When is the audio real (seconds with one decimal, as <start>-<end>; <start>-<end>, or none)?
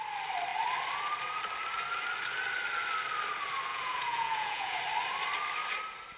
0.0-3.7; 4.8-6.2